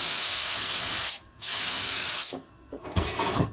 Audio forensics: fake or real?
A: fake